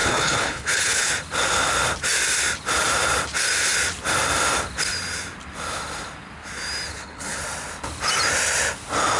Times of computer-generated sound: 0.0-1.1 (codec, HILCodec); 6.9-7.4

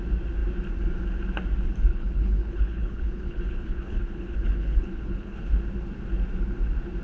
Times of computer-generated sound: 1.9-5.5 (codec, HILCodec)